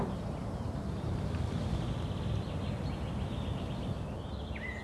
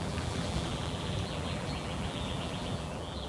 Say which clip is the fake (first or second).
second